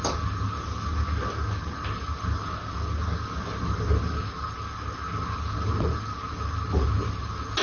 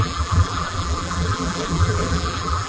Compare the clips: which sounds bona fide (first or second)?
first